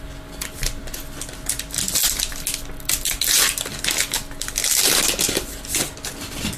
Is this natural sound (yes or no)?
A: yes